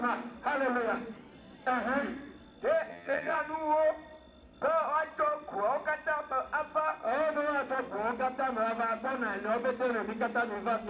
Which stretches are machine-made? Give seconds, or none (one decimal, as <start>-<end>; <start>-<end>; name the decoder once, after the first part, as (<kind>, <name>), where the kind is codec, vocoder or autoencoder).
2.9-3.4 (vocoder, HiFi-GAN)